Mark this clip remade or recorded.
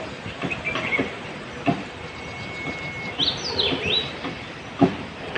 recorded